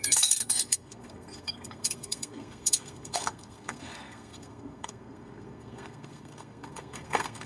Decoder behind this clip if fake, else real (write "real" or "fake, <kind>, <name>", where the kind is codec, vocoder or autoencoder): fake, codec, SNAC